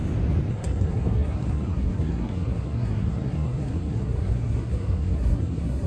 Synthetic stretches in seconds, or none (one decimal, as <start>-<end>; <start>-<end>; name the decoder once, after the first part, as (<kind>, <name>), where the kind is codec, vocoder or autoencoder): 0.5-5.9 (codec, SNAC)